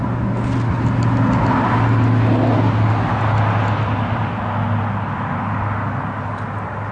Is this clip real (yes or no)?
yes